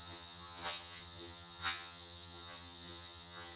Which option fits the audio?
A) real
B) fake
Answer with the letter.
B